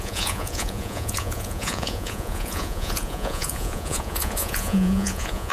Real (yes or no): no